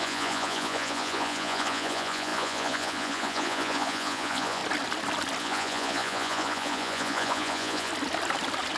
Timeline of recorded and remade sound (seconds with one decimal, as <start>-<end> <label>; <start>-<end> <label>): 0.0-4.6 remade; 4.6-5.4 recorded; 5.4-7.9 remade; 7.9-8.8 recorded